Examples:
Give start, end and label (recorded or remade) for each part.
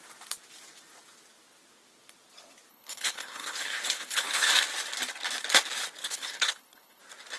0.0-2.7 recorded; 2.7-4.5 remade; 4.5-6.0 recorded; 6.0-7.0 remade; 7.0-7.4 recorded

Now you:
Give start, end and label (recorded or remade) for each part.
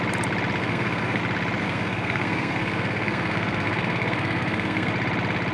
0.0-0.6 recorded; 0.6-1.2 remade; 1.2-1.6 recorded; 1.6-4.9 remade; 4.9-5.5 recorded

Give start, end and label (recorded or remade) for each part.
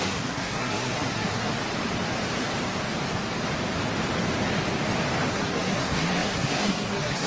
0.0-1.5 remade; 1.5-5.3 recorded; 5.3-7.3 remade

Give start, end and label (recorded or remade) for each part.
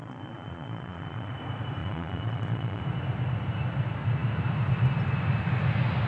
0.0-1.3 remade; 1.3-1.8 recorded; 1.8-2.8 remade; 2.8-6.1 recorded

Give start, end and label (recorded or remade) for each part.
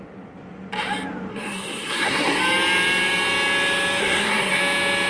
0.0-1.3 recorded; 1.3-2.4 remade; 2.4-4.0 recorded; 4.0-4.6 remade; 4.6-5.1 recorded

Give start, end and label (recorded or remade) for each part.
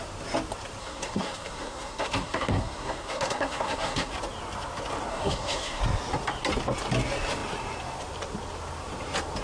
0.0-0.8 recorded; 0.8-4.1 remade; 4.1-5.1 recorded; 5.1-5.8 remade; 5.8-9.4 recorded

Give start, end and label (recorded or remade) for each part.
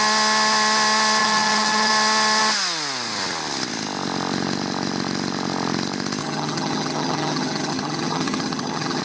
0.0-1.2 recorded; 1.2-1.9 remade; 1.9-6.2 recorded; 6.2-9.0 remade